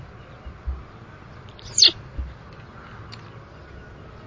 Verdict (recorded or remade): recorded